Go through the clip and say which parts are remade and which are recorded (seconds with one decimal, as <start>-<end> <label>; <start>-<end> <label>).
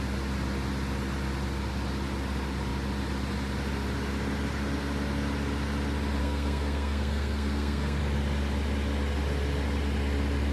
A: 0.0-6.2 recorded; 6.2-8.0 remade; 8.0-10.5 recorded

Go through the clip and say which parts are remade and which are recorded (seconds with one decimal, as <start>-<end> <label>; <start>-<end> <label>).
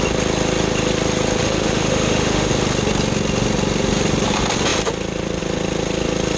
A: 0.0-1.4 recorded; 1.4-2.5 remade; 2.5-6.4 recorded